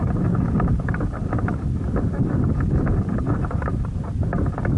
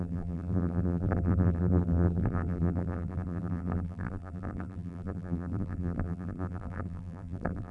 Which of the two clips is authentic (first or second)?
first